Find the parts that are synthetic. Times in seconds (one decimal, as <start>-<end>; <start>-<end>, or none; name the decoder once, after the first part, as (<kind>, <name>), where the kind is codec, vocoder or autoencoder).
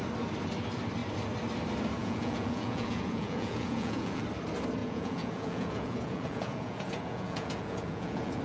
2.0-4.2 (vocoder, Vocos); 4.8-8.4